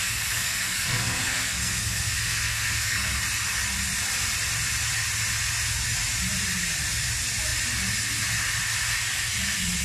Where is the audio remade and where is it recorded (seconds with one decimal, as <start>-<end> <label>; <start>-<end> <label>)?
0.0-3.2 remade; 3.2-9.8 recorded